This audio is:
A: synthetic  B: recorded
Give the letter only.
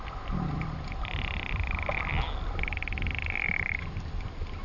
B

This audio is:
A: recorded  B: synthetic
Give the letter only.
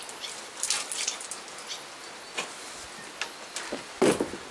A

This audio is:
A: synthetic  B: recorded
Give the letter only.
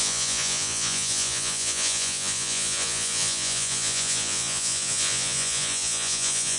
A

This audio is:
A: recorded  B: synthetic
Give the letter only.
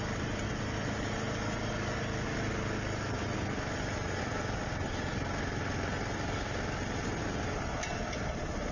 A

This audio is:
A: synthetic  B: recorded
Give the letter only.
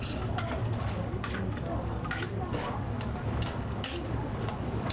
A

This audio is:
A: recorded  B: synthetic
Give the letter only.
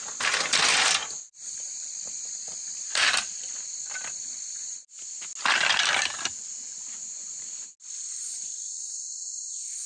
A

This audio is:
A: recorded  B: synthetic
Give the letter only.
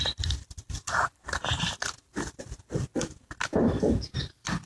A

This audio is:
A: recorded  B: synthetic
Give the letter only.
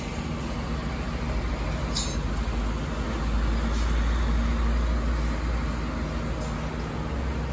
A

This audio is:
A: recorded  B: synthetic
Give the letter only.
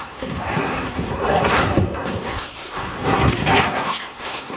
B